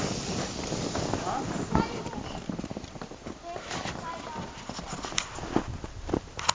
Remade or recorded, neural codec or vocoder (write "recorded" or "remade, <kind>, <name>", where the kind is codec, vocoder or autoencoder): recorded